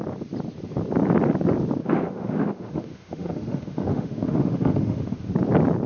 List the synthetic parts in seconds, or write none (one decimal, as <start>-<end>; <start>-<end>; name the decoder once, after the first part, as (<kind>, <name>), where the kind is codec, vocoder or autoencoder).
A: 1.8-5.3 (autoencoder, DAC-VAE)

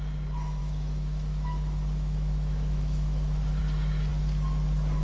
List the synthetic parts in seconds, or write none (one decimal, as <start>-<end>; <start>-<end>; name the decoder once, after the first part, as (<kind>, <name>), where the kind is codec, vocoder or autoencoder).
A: 0.6-3.6 (autoencoder, DAC-VAE)

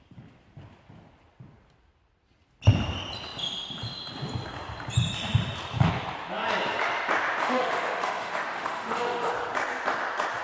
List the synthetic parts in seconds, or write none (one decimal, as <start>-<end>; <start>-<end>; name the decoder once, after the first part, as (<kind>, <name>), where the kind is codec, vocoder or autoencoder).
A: 7.4-9.3 (autoencoder, DAC-VAE)

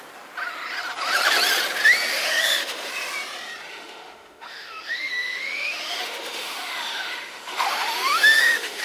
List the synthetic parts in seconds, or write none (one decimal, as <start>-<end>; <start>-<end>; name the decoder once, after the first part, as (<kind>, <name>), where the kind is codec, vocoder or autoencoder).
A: 2.1-2.9 (autoencoder, DAC-VAE); 3.7-8.8

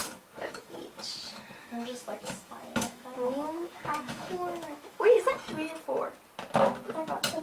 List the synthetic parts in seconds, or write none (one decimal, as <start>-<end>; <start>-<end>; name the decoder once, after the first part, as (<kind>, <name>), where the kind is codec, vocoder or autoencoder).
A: 0.0-0.8 (autoencoder, DAC-VAE); 1.6-5.2

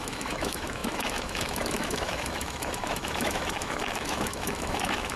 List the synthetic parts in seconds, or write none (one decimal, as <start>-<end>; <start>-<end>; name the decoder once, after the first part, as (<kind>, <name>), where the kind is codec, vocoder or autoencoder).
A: 0.0-5.2 (autoencoder, DAC-VAE)

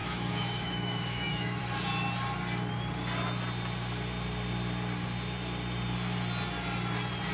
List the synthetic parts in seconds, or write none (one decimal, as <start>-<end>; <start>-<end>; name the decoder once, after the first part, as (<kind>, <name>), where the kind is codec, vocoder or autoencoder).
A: 0.0-1.6 (autoencoder, DAC-VAE)